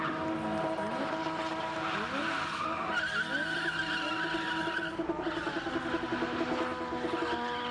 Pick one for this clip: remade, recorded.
recorded